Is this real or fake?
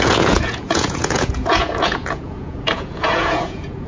fake